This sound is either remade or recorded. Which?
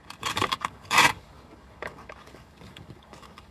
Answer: remade